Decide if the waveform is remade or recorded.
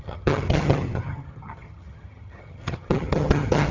remade